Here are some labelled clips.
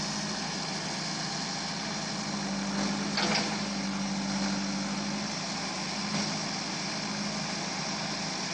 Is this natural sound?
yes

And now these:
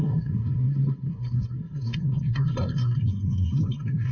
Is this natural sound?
no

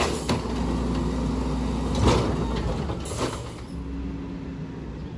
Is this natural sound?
yes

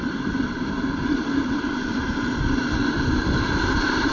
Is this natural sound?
no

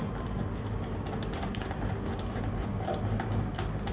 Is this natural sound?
yes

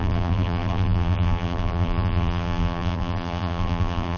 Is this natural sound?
no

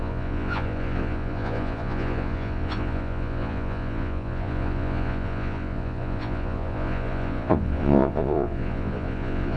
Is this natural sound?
no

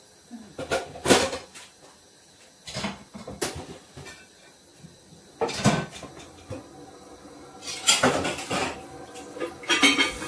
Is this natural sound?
yes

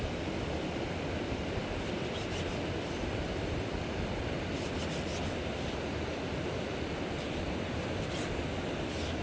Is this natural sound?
yes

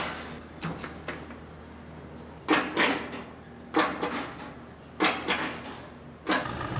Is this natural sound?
yes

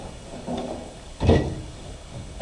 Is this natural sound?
no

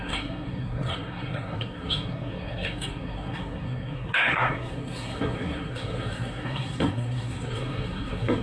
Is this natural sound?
no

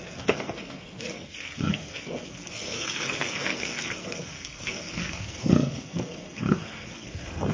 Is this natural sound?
no